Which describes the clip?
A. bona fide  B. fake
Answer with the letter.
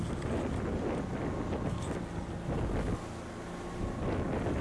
A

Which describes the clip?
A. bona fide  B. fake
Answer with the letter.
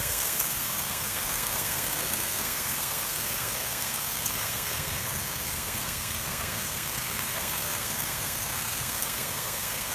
B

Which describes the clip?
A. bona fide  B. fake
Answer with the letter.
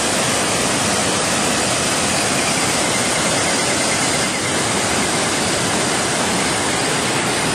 B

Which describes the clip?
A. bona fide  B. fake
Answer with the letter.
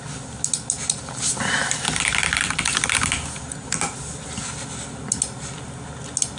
A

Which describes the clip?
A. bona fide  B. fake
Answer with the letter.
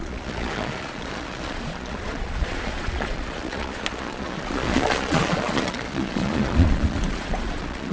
B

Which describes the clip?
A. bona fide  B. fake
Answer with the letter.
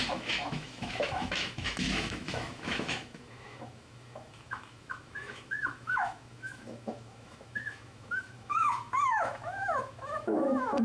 B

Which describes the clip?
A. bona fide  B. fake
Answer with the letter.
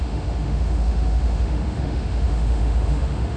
B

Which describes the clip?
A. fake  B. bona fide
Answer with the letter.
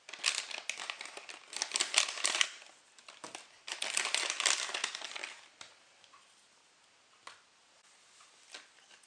B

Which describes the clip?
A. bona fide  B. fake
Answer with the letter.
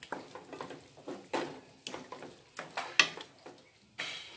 A